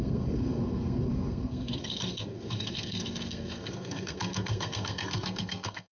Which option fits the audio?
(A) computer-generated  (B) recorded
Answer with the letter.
A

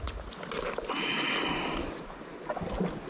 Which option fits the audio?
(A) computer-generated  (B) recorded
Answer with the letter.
B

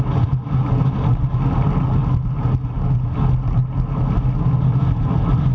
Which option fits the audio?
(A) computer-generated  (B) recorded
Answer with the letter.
B